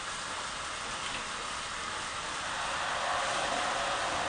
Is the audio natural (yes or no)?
yes